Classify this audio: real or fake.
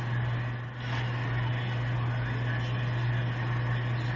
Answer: real